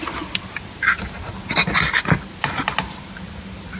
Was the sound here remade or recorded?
recorded